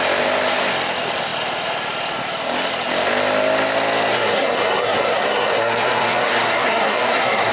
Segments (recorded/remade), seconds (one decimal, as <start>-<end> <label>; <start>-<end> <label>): 0.0-4.1 recorded; 4.1-7.5 remade